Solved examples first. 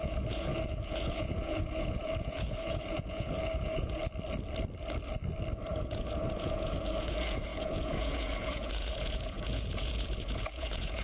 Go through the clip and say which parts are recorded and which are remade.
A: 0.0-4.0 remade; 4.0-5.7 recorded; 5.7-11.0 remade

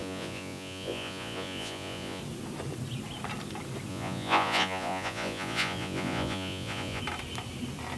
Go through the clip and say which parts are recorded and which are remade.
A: 0.0-2.2 remade; 2.2-3.9 recorded; 3.9-7.0 remade; 7.0-8.0 recorded

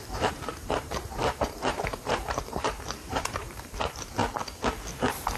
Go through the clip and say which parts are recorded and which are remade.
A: 0.0-4.2 remade; 4.2-4.9 recorded; 4.9-5.4 remade

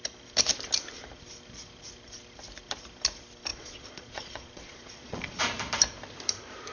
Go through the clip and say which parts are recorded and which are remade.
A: 0.0-3.5 recorded; 3.5-5.4 remade; 5.4-6.7 recorded

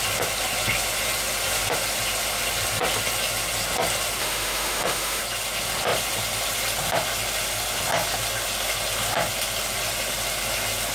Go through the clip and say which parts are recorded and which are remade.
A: 0.0-4.2 recorded; 4.2-5.2 remade; 5.2-10.9 recorded